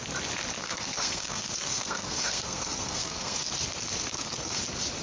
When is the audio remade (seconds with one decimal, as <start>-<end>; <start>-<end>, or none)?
0.5-3.5; 4.1-4.6